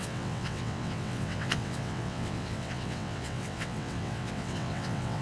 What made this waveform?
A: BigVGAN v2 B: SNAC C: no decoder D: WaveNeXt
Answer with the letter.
D